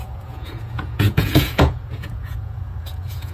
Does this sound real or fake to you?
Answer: fake